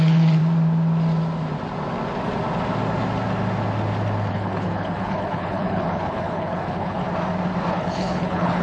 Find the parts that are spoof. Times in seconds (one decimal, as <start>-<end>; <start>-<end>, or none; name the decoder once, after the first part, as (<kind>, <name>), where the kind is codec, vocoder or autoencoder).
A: 0.0-0.4 (codec, HILCodec); 4.3-7.0; 7.7-8.6